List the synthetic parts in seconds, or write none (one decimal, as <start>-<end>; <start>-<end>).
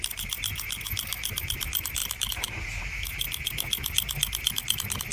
none